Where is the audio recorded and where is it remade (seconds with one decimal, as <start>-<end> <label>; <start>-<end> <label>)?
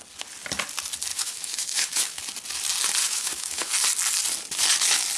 0.0-1.1 recorded; 1.1-2.2 remade; 2.2-3.0 recorded; 3.0-3.7 remade; 3.7-5.2 recorded